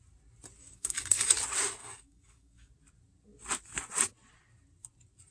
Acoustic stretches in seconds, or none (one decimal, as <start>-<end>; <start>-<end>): 0.0-0.6; 1.3-1.8; 2.7-5.3